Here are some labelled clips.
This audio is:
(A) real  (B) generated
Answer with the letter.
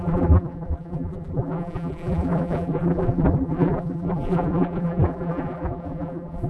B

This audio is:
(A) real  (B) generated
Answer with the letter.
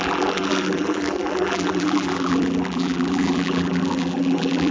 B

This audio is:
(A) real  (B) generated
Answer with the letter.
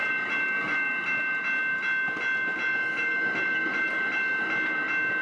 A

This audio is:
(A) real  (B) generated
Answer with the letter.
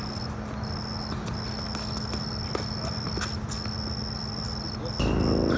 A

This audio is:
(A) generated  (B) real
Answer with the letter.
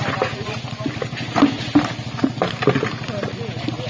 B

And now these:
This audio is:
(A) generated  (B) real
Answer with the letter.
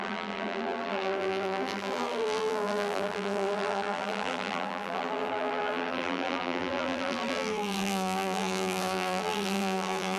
A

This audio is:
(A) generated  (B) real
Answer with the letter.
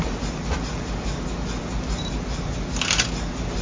B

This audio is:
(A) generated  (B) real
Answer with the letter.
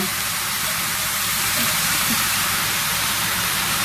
A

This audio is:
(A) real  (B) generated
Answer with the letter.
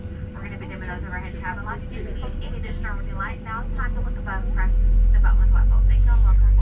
A